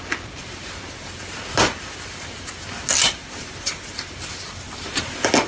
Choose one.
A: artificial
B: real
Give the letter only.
B